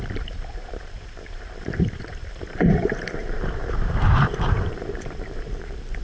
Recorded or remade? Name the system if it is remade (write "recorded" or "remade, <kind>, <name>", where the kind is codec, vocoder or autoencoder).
remade, vocoder, BigVGAN v2